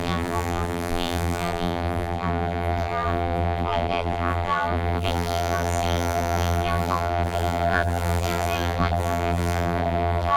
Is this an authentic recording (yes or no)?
no